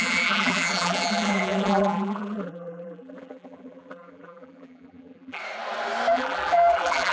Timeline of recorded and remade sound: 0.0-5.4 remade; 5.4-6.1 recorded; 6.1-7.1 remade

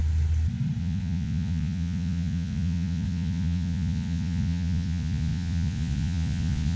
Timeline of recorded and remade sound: 0.0-0.8 recorded; 0.8-6.8 remade